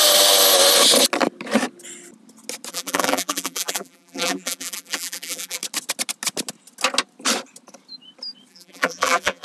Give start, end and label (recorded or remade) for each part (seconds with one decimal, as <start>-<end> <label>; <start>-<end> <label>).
0.0-2.7 recorded; 2.7-5.6 remade; 5.6-8.5 recorded; 8.5-9.4 remade